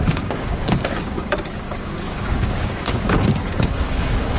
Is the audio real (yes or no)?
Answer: no